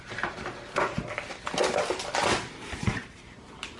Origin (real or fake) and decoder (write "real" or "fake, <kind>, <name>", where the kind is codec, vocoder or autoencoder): real